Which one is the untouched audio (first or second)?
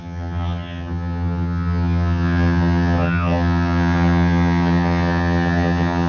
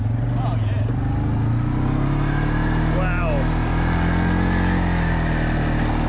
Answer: second